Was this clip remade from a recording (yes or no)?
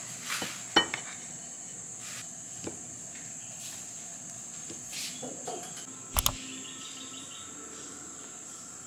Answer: no